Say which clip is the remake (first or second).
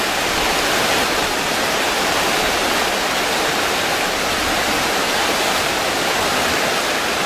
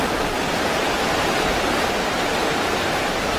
first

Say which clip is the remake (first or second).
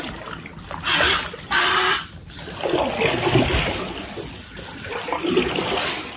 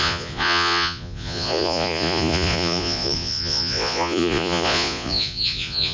second